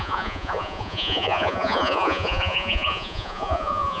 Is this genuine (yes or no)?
no